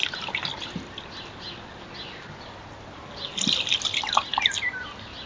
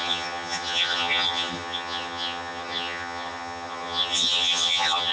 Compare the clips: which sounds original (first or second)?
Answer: first